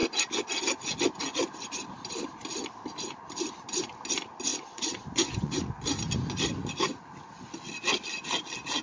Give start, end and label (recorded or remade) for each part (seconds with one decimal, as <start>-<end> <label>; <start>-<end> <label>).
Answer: 0.0-4.5 recorded; 4.5-5.6 remade; 5.6-8.8 recorded